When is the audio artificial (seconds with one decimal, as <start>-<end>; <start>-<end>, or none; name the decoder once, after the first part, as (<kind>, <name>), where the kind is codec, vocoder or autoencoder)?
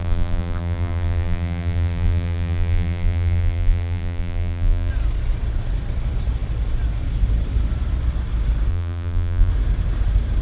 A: 0.0-4.9 (vocoder, BigVGAN v2); 8.7-9.5